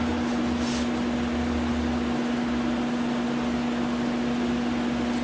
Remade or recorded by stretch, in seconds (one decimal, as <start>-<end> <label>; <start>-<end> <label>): 0.0-5.2 recorded